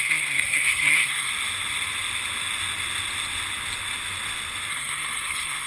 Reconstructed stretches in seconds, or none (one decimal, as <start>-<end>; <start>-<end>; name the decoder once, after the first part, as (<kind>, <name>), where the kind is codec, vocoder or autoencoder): 0.0-1.3 (codec, SNAC); 4.7-5.7